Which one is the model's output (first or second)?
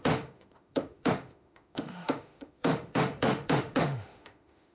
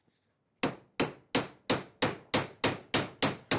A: first